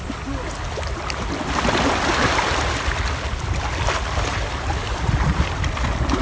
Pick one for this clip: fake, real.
real